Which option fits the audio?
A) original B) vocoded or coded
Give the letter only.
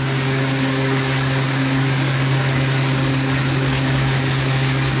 B